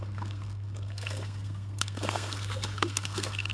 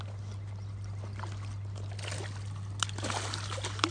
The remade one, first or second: first